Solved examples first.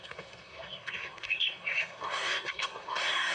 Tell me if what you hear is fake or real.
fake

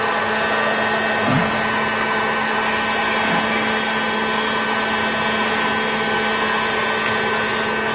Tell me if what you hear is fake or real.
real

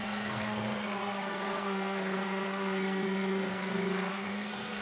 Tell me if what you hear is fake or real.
fake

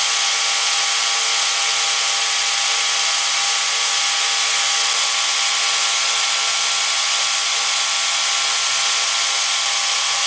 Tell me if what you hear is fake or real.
real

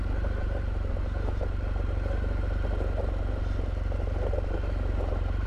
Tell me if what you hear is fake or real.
real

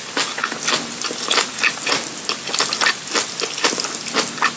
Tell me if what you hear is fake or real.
real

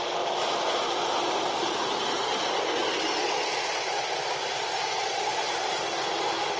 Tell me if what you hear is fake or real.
real